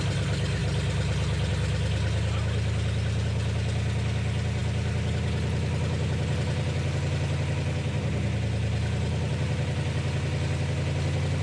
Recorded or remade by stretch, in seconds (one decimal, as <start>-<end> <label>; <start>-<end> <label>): 0.0-11.4 recorded